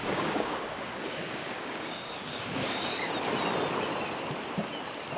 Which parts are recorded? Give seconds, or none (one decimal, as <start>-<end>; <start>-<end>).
3.1-5.2